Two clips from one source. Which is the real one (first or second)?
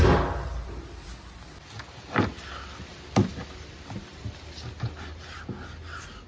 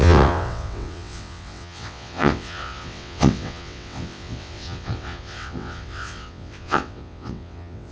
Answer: first